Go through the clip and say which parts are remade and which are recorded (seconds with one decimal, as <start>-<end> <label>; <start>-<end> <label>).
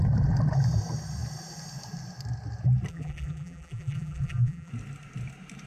0.0-2.9 recorded; 2.9-4.7 remade; 4.7-5.7 recorded